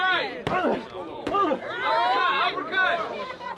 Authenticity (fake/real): real